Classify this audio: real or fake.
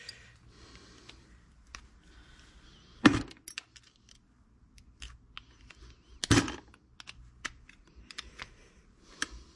real